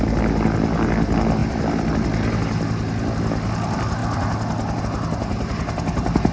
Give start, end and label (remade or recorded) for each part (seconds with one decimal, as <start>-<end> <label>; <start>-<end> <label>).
0.0-1.4 recorded; 1.4-1.9 remade; 1.9-4.0 recorded; 4.0-4.8 remade; 4.8-6.3 recorded